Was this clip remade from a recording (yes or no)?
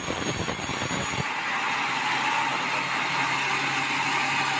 no